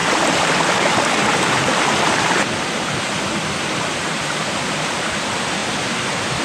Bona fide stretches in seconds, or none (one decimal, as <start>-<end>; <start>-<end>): 2.6-5.6